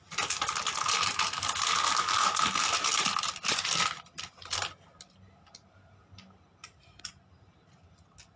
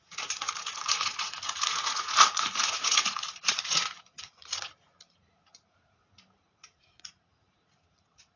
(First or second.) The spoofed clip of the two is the second